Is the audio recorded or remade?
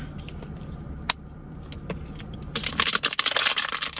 remade